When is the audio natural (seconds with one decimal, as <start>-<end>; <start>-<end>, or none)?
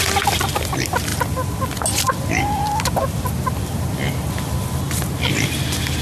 0.0-6.0